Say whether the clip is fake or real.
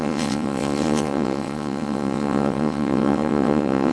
fake